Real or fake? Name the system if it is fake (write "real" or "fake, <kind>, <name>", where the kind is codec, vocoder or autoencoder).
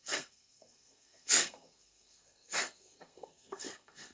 fake, codec, SNAC